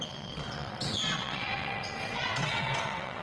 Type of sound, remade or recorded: remade